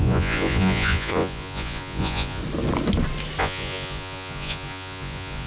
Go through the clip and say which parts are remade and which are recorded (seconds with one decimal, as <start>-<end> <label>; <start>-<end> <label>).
0.0-2.4 remade; 2.4-3.4 recorded; 3.4-5.5 remade